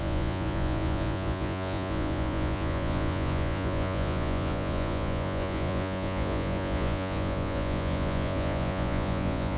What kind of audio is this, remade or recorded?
remade